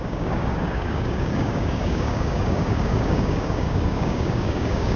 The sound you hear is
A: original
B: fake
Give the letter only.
B